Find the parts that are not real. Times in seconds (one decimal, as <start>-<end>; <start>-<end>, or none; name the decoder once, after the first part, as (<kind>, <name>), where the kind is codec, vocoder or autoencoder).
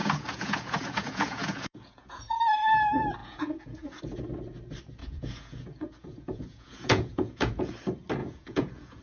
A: 0.0-2.4 (vocoder, Vocos); 3.2-4.0; 5.0-7.7; 8.2-9.0